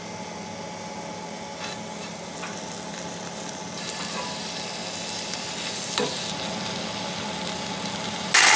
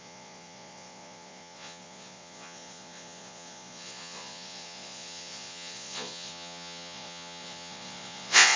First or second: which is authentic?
first